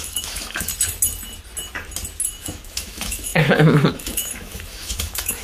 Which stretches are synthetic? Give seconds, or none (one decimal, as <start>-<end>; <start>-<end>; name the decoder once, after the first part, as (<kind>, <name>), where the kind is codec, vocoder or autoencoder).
0.0-0.7 (autoencoder, DAC-VAE); 2.3-5.4